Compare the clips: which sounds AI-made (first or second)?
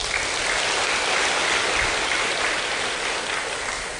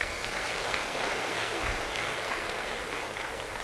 second